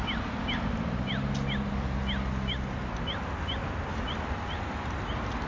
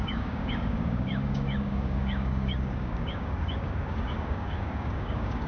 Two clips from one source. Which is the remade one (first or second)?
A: second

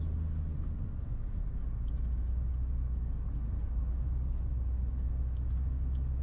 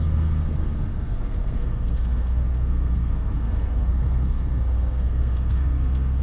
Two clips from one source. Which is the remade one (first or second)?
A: second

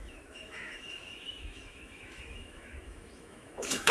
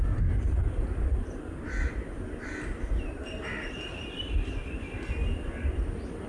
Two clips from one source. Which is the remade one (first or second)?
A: first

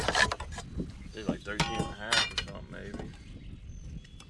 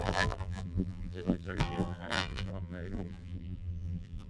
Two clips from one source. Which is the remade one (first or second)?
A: second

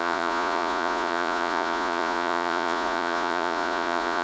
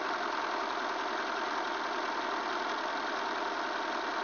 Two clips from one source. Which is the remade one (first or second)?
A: first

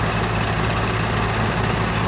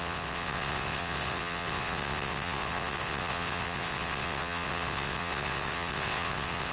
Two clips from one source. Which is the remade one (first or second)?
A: second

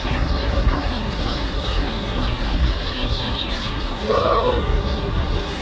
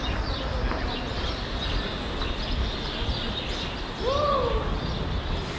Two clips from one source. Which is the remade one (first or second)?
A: first